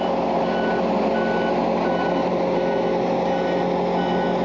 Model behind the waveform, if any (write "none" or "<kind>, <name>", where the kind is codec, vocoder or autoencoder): none